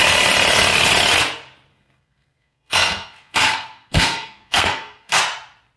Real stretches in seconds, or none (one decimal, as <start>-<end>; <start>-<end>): 0.0-1.7; 5.2-5.8

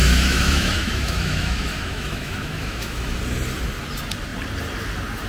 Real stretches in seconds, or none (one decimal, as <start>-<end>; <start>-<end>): 3.2-5.3

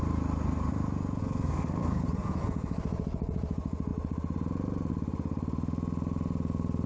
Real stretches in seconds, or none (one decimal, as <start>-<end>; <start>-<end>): 0.0-1.2; 2.0-6.9